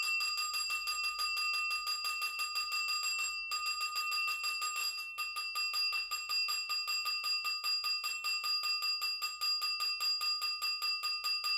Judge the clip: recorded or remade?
recorded